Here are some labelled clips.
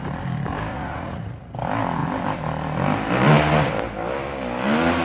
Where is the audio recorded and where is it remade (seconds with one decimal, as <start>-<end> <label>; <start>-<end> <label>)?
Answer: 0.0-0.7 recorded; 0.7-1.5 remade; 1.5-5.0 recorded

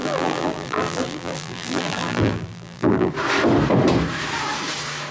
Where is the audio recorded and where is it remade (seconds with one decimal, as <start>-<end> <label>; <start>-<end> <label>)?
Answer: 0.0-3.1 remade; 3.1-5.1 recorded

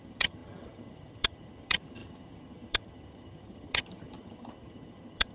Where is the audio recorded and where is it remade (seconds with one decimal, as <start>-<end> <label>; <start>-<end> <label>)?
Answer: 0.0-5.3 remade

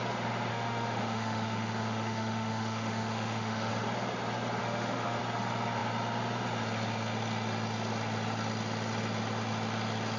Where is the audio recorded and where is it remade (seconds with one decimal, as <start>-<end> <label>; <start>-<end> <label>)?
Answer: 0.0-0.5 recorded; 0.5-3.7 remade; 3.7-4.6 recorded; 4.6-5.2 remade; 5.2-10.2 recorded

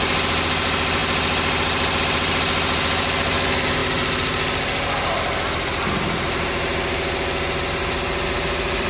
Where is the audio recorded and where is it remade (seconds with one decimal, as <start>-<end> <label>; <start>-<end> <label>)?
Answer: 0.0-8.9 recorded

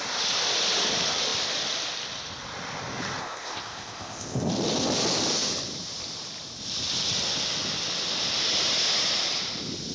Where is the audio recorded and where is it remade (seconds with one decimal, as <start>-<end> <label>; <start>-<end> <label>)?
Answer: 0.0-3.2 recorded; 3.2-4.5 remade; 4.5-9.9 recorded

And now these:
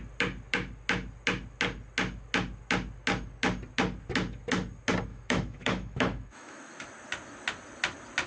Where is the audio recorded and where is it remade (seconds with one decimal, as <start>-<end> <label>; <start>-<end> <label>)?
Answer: 0.0-5.1 recorded; 5.1-6.9 remade; 6.9-8.3 recorded